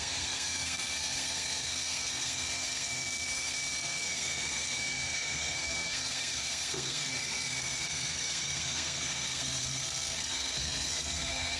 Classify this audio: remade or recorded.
remade